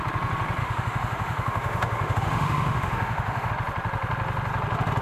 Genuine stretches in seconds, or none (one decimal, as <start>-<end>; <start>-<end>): 0.0-0.6; 3.5-5.0